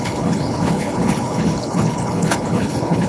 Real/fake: fake